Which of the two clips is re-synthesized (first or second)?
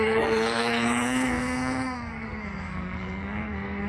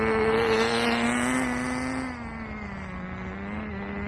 first